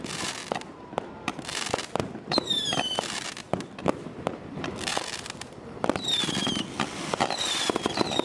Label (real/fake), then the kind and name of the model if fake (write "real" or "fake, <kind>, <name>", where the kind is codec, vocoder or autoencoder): fake, vocoder, BigVGAN v2